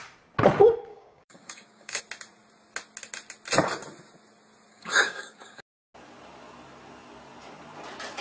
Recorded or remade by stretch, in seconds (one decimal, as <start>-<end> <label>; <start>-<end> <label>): 0.0-0.9 recorded; 0.9-2.0 remade; 2.0-4.7 recorded; 4.7-5.6 remade; 5.6-8.2 recorded